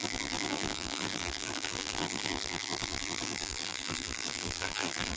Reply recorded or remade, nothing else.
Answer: remade